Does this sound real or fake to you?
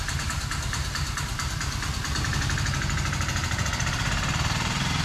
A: fake